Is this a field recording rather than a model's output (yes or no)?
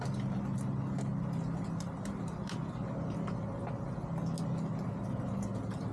yes